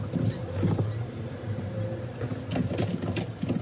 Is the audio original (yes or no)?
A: yes